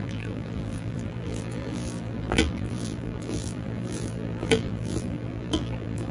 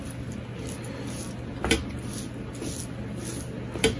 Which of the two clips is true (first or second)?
second